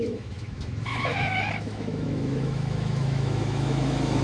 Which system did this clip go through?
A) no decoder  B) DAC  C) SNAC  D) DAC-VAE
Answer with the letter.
D